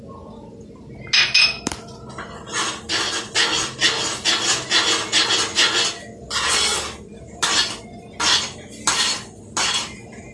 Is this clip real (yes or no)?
yes